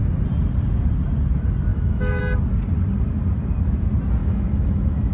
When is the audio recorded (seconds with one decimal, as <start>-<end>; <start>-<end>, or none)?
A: 0.0-1.7; 2.2-4.2

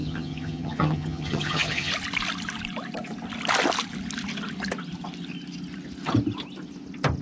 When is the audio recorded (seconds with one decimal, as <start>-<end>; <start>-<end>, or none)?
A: 1.9-7.2

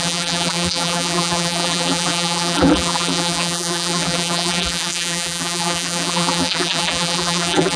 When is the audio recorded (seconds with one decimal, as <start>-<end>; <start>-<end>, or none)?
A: none